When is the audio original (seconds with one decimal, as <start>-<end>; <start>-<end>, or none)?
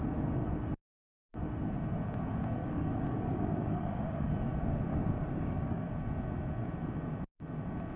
0.0-2.6; 4.3-4.9; 5.9-8.0